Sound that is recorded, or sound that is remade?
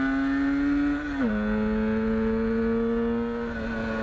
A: recorded